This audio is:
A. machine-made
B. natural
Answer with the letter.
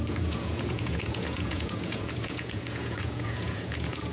A